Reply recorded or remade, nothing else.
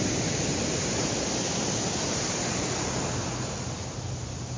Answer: remade